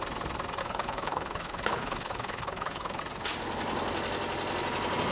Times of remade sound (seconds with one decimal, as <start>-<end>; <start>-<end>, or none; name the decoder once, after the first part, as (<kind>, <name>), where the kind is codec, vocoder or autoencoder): 0.6-3.0 (codec, HILCodec)